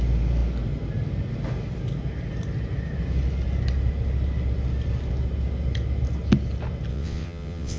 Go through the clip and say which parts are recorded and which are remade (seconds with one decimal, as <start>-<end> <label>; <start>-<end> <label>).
0.0-6.9 recorded; 6.9-7.8 remade